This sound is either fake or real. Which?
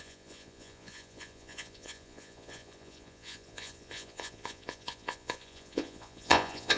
fake